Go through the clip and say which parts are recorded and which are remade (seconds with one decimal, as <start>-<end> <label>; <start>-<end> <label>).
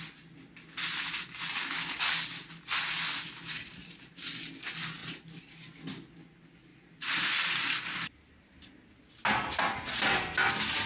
0.0-6.7 recorded; 6.7-8.9 remade; 8.9-10.9 recorded